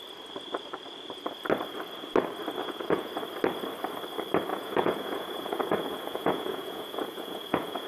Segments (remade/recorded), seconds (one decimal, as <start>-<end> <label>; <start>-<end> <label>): 0.0-2.6 recorded; 2.6-3.1 remade; 3.1-4.5 recorded; 4.5-7.9 remade